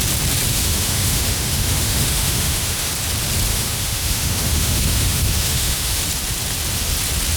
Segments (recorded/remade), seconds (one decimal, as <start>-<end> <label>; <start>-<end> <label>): 0.0-0.5 recorded; 0.5-2.9 remade; 2.9-3.5 recorded; 3.5-6.0 remade; 6.0-7.4 recorded